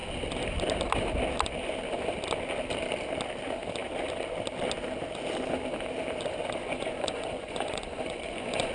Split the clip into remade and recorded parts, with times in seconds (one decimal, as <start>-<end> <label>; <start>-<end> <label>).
0.0-6.6 recorded; 6.6-8.7 remade